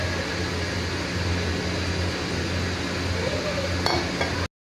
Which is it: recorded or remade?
recorded